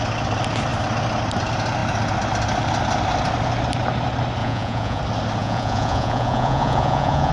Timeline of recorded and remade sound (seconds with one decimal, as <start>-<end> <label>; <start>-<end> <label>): 0.0-4.4 recorded; 4.4-5.0 remade; 5.0-5.4 recorded; 5.4-7.3 remade